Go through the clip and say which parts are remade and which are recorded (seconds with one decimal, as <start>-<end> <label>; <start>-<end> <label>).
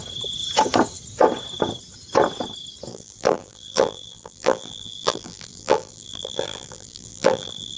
0.0-2.9 recorded; 2.9-7.8 remade